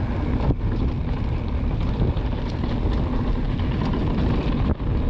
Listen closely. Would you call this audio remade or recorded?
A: recorded